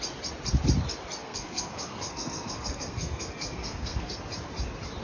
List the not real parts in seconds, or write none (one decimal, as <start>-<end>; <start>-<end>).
1.2-4.2